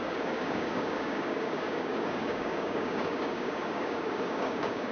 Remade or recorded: remade